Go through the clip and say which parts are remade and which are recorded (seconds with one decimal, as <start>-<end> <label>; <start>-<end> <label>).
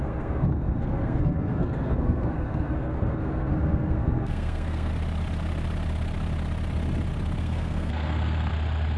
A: 0.0-4.9 remade; 4.9-7.4 recorded; 7.4-8.5 remade; 8.5-9.0 recorded